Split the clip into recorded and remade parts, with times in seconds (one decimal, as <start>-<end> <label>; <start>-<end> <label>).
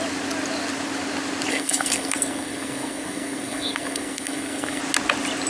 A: 0.0-1.5 recorded; 1.5-4.8 remade; 4.8-5.5 recorded